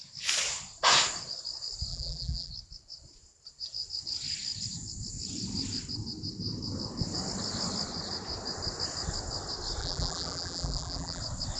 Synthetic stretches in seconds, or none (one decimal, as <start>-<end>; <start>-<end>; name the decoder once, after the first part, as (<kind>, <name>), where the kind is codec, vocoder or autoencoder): 1.9-2.5 (vocoder, BigVGAN v2); 9.8-11.2